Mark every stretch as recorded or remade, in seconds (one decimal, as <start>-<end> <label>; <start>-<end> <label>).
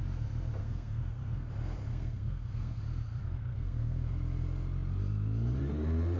0.0-0.6 recorded; 0.6-1.5 remade; 1.5-1.9 recorded; 1.9-2.8 remade; 2.8-3.2 recorded; 3.2-4.1 remade; 4.1-6.2 recorded